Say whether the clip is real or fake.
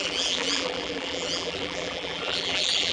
fake